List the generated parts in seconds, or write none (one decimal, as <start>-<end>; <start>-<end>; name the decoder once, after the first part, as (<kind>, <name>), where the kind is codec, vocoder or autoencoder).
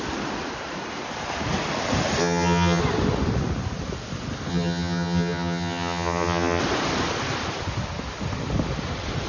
2.2-2.8 (vocoder, HiFi-GAN); 4.5-6.6